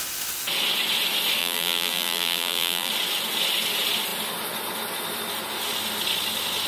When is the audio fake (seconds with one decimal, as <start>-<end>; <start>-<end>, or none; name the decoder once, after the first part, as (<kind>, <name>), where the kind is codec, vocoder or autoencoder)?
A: 1.4-2.9 (vocoder, BigVGAN v2)